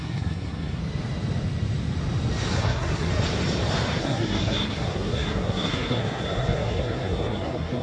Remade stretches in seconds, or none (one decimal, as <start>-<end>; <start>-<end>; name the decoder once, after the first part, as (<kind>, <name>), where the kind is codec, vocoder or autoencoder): 0.0-0.8 (codec, SNAC); 2.5-3.1; 4.0-7.8